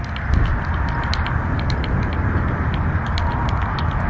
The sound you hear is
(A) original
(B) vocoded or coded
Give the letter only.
A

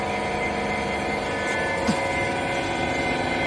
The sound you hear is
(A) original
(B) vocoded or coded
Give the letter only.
A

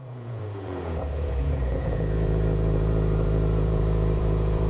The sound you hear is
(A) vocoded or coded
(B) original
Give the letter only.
A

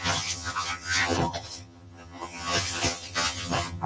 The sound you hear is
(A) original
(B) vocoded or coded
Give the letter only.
B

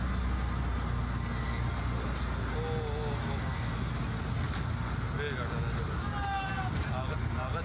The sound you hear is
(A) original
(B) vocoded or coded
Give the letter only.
A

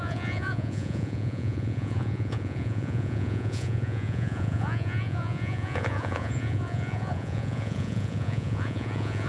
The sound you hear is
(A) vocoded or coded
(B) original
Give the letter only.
A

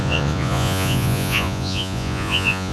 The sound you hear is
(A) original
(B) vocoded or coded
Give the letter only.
B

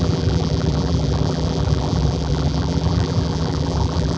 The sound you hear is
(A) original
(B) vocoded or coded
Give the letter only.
B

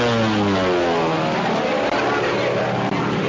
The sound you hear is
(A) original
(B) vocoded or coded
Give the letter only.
A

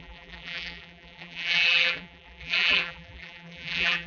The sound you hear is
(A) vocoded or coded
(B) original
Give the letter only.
A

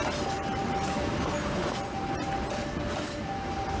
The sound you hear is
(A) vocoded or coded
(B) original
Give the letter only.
B